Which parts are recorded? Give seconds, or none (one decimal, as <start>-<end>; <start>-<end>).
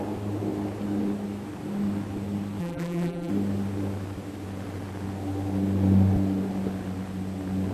0.0-2.6; 3.3-7.7